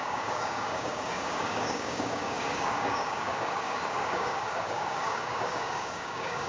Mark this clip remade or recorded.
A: remade